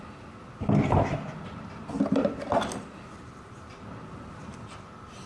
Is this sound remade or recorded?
recorded